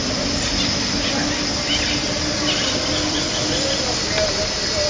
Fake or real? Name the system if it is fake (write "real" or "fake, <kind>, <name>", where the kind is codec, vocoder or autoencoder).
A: real